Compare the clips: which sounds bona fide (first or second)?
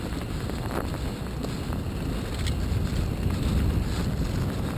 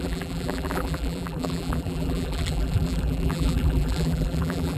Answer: first